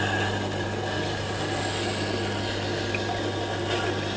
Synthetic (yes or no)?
no